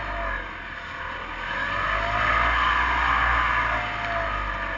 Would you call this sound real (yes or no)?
yes